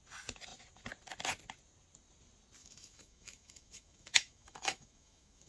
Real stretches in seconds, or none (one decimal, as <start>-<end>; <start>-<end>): 0.0-2.6